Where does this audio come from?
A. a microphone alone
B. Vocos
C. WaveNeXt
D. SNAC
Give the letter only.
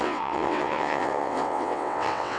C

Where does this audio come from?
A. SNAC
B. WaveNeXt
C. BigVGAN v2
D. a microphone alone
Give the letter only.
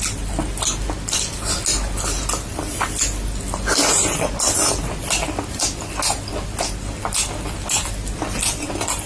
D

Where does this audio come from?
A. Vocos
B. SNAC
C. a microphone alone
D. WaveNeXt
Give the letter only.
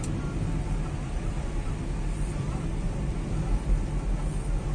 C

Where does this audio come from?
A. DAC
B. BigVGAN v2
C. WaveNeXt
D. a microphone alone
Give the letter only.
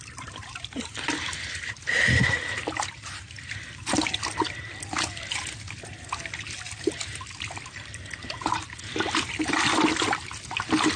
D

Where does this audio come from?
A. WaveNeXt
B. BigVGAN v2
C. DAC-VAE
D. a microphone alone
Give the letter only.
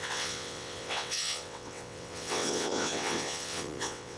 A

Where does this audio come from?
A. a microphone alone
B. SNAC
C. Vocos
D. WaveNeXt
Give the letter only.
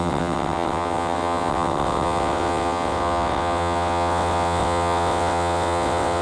D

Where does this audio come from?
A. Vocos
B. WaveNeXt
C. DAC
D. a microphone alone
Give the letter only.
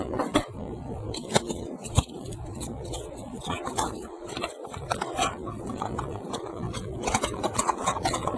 B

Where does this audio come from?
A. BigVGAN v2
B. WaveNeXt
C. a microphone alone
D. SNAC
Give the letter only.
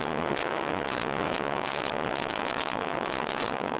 B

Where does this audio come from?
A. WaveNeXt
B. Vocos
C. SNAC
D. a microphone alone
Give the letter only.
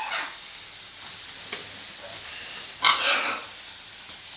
D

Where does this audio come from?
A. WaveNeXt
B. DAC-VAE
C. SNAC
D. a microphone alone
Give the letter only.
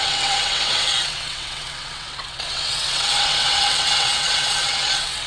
A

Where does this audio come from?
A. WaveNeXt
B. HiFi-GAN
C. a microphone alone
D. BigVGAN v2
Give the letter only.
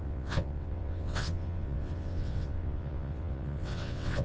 A